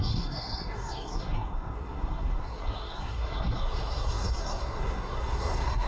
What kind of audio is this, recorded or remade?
remade